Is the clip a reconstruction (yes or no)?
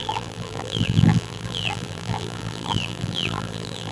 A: yes